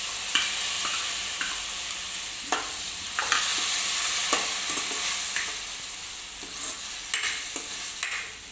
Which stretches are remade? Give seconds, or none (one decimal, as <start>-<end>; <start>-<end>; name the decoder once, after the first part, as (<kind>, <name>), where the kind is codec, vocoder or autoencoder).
none